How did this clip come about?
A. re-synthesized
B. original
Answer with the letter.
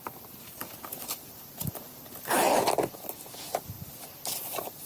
B